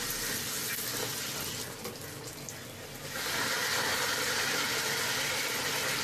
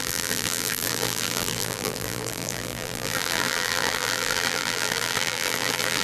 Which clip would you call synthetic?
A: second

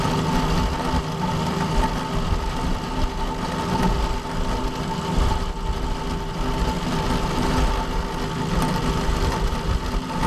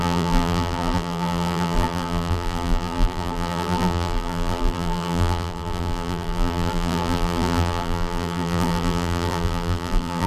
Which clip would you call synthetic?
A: second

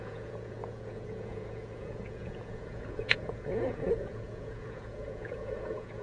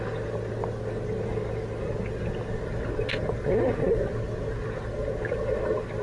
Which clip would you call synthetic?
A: first